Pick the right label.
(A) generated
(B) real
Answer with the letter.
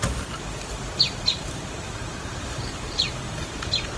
A